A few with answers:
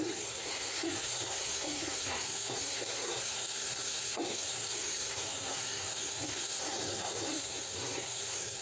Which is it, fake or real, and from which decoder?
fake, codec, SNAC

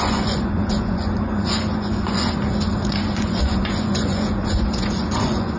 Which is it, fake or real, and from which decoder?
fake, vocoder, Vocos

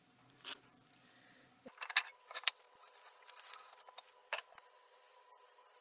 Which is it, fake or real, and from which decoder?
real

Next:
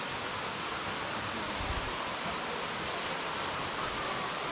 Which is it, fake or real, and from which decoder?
real